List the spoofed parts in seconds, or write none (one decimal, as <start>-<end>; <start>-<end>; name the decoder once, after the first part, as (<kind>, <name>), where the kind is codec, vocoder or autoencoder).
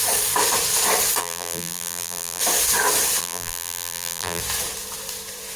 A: 1.2-2.4 (vocoder, BigVGAN v2); 3.2-4.4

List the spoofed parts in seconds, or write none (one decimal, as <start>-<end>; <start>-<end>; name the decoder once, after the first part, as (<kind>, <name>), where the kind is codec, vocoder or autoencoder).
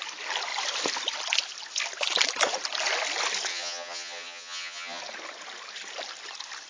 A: 3.5-5.0 (vocoder, HiFi-GAN)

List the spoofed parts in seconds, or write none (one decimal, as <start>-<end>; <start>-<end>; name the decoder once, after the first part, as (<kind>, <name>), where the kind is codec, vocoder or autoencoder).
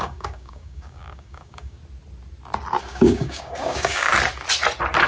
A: 0.0-1.8 (codec, DAC); 2.8-4.1